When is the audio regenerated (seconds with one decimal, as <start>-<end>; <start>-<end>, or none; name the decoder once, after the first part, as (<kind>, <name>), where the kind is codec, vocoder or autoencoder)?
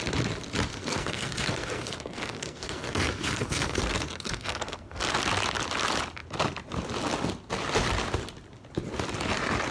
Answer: 0.7-5.0 (codec, SNAC)